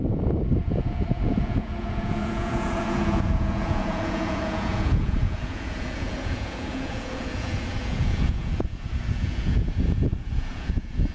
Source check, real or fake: fake